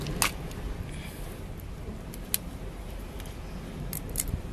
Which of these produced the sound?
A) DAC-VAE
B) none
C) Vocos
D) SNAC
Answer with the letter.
B